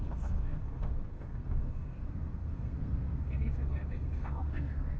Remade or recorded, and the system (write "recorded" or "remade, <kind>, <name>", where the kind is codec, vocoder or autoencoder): remade, codec, SNAC